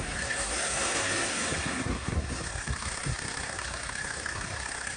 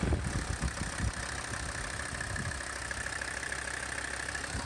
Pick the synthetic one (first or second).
first